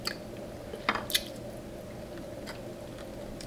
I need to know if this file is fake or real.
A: real